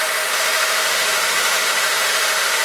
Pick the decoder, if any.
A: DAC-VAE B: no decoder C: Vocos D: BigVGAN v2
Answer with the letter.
A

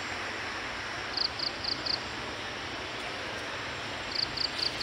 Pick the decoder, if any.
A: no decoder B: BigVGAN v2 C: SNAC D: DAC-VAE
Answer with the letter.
A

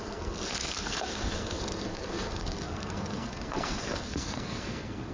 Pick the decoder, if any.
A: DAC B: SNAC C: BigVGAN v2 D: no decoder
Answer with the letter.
B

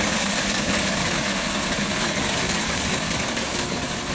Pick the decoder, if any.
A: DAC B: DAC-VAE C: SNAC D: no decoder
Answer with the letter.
A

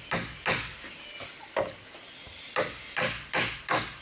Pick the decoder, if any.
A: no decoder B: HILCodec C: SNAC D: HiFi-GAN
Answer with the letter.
A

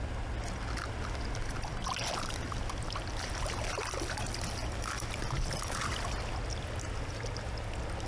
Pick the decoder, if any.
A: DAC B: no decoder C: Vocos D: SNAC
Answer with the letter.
B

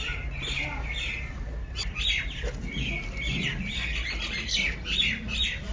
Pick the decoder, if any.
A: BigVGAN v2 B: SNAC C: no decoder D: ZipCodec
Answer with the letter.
C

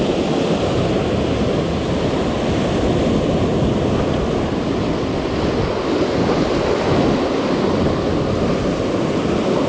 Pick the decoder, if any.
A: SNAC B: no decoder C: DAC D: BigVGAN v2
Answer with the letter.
B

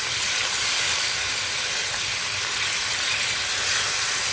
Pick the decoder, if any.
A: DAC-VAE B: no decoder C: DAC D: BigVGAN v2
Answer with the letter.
D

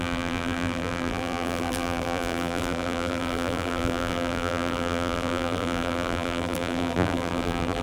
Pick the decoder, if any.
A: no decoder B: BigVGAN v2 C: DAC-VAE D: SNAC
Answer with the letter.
B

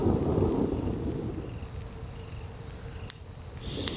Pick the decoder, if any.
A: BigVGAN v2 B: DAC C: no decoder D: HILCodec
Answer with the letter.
C